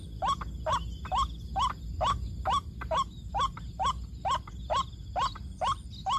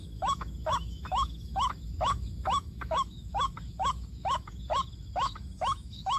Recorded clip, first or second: first